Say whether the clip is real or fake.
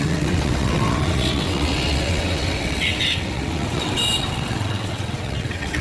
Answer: fake